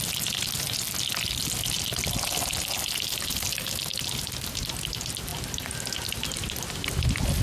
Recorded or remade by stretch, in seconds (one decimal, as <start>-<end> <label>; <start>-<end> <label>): 0.0-7.4 recorded